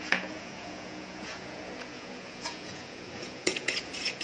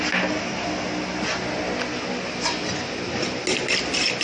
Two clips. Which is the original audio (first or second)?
second